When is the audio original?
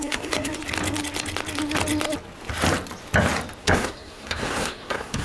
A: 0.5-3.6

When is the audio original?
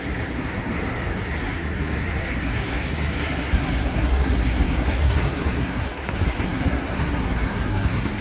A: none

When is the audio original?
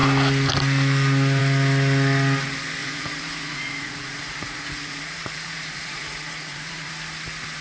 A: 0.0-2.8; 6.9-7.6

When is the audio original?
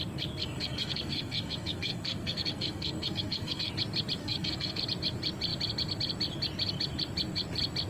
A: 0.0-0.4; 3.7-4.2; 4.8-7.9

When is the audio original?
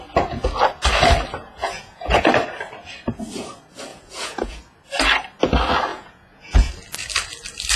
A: 0.0-1.4; 2.3-3.9; 4.6-5.9; 6.7-7.8